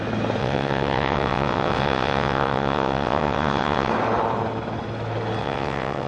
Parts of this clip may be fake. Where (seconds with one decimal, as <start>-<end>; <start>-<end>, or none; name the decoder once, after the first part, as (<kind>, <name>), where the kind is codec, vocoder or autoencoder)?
0.4-3.9 (vocoder, WaveNeXt); 5.4-6.1